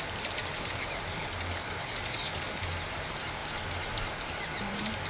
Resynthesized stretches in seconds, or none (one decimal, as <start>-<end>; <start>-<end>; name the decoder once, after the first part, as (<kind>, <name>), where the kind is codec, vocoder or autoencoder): 0.4-2.6 (codec, DAC)